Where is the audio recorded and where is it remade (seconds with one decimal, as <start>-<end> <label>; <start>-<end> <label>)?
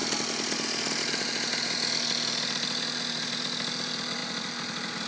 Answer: 0.0-5.1 recorded